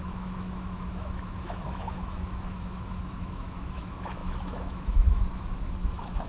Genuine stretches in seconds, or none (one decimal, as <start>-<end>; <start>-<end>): none